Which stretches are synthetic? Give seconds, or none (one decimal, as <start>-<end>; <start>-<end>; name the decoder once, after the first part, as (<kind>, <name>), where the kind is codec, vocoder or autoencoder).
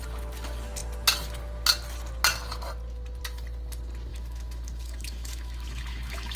4.1-6.4 (autoencoder, DAC-VAE)